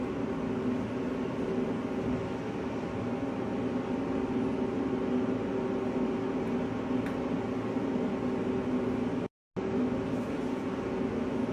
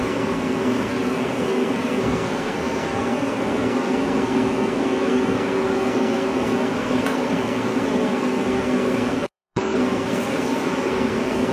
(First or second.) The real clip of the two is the first